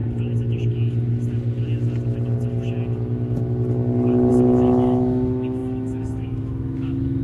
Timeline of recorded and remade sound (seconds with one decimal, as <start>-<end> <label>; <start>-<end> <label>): 0.0-4.3 recorded; 4.3-7.2 remade